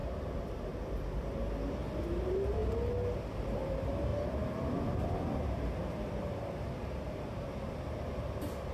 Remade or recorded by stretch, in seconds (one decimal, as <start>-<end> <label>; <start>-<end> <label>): 0.0-2.6 remade; 2.6-3.4 recorded; 3.4-8.7 remade